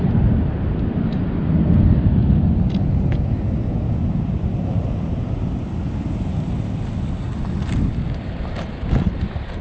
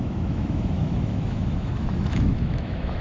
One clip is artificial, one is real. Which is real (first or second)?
first